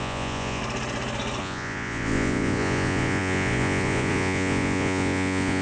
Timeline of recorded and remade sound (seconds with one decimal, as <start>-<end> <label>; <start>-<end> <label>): 0.0-0.6 remade; 0.6-1.4 recorded; 1.4-5.6 remade